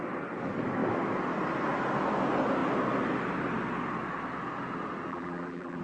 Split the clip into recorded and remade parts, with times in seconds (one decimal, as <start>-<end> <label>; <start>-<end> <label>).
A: 0.0-5.1 recorded; 5.1-5.8 remade